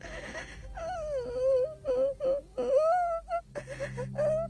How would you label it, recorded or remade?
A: recorded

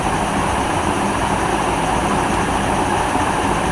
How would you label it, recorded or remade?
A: recorded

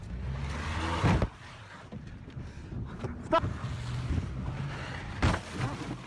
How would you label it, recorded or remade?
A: recorded